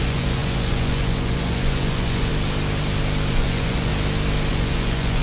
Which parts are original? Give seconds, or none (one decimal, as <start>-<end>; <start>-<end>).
2.3-3.3; 3.9-4.5